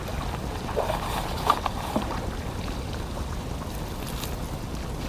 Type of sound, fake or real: real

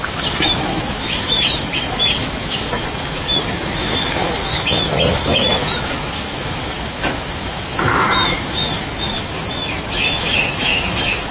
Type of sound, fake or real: fake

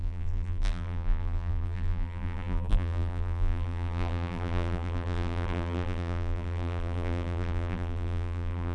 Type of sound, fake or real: fake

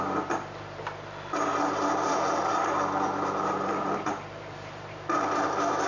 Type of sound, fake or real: fake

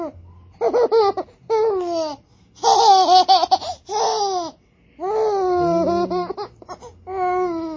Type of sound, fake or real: real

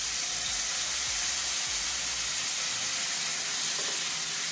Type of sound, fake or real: real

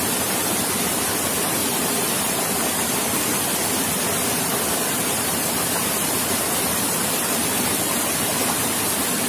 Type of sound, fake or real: real